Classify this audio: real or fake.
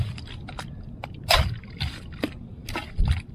real